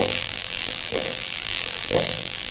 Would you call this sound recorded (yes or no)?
no